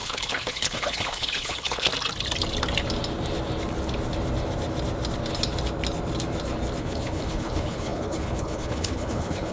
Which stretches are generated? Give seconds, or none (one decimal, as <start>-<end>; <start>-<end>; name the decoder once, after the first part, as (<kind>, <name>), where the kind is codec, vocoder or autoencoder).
0.0-1.9 (codec, HILCodec); 6.8-9.5